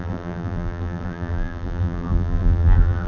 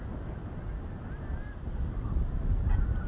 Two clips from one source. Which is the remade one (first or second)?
first